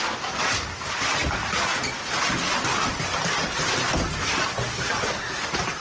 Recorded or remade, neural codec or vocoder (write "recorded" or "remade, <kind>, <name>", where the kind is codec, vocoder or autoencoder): recorded